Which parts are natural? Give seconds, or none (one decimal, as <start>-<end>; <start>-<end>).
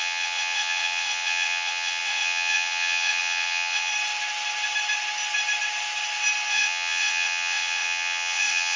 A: 3.9-6.5